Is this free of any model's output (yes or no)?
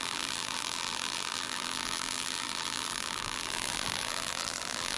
no